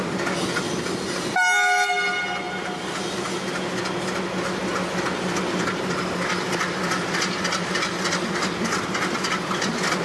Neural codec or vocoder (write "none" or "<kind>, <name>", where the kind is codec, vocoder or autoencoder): none